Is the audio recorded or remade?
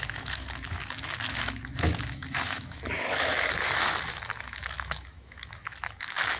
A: remade